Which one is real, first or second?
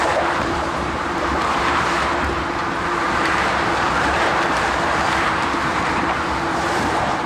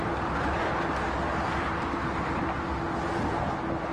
second